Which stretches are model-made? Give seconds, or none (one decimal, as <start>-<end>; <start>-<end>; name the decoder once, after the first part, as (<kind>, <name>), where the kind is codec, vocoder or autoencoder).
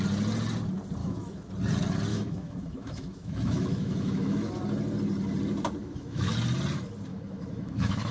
1.0-1.5 (autoencoder, DAC-VAE); 2.1-4.5; 5.8-6.3; 7.1-8.1